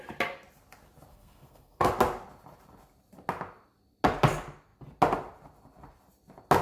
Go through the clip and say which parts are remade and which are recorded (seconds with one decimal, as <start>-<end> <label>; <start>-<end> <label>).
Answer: 0.0-1.1 recorded; 1.1-1.9 remade; 1.9-6.6 recorded